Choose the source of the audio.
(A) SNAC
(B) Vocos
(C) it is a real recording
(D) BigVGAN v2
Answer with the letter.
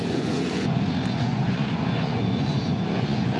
B